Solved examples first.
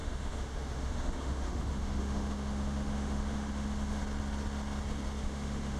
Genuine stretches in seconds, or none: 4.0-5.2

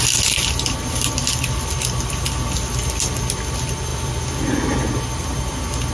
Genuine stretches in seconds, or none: 0.0-5.9